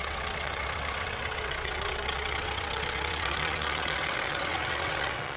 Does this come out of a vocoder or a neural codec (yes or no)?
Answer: yes